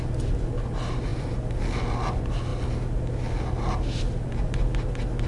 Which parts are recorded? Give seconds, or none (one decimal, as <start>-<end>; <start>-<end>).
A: 0.0-5.3